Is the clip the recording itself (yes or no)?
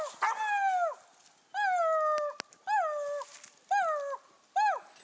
yes